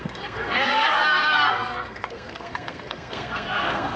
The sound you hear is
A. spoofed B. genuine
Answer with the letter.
A